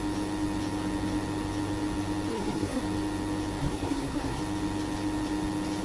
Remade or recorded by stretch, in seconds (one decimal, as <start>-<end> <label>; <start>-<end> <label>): 0.0-2.3 recorded; 2.3-2.8 remade; 2.8-3.6 recorded; 3.6-4.4 remade; 4.4-5.8 recorded